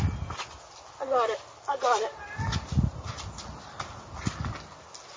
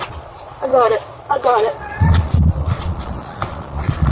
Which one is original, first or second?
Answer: first